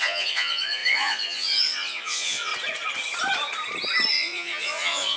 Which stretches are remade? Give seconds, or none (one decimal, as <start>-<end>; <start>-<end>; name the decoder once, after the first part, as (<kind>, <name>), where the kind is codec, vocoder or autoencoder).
0.0-2.5 (vocoder, Vocos); 4.1-5.2